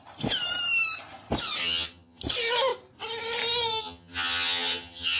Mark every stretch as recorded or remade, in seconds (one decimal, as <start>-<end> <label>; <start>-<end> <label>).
0.0-1.6 recorded; 1.6-2.2 remade; 2.2-3.8 recorded; 3.8-5.2 remade